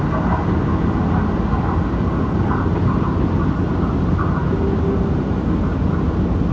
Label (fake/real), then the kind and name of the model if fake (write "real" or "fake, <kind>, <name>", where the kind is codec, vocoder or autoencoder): real